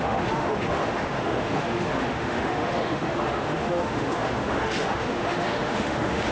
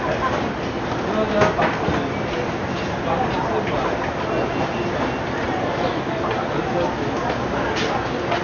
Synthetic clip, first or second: first